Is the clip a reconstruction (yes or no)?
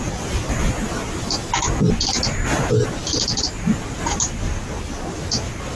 no